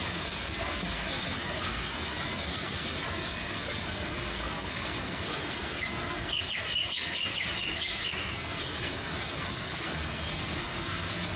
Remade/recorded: remade